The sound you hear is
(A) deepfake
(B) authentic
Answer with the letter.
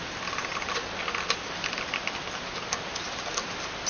B